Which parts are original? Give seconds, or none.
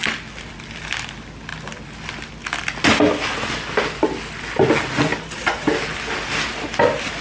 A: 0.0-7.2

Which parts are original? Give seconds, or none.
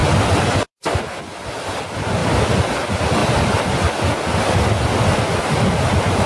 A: 1.0-2.2; 2.7-6.3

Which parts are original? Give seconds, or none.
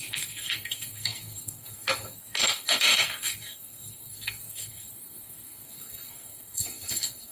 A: none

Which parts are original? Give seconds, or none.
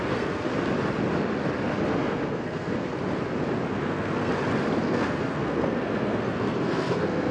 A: 0.5-1.8; 2.9-3.7; 4.3-4.8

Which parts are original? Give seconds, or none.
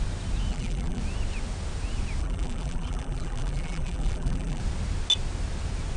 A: 0.0-0.5; 1.0-2.2; 4.6-6.0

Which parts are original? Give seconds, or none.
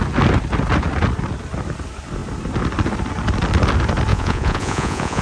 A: 0.0-4.1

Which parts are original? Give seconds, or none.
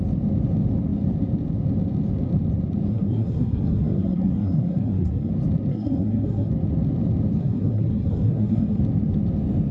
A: 0.0-2.9; 5.3-5.7; 6.5-7.4; 8.8-9.7